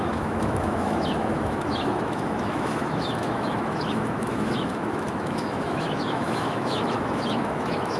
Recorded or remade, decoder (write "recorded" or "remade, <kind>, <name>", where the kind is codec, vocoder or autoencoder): remade, autoencoder, DAC-VAE